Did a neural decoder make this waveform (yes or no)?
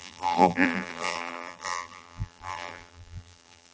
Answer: yes